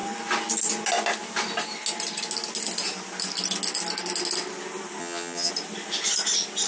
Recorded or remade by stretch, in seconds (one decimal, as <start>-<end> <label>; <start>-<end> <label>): 0.0-5.0 recorded; 5.0-5.5 remade; 5.5-6.7 recorded